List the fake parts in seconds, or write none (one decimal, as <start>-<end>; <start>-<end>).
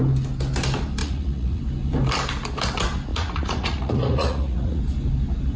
1.0-1.6; 3.1-4.8